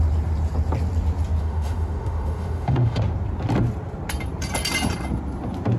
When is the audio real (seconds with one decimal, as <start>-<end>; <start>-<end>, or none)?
0.0-1.4; 3.0-5.8